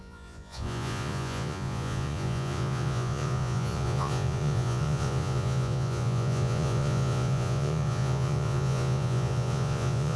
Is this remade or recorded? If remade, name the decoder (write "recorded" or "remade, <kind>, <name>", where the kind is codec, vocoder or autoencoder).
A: remade, vocoder, Vocos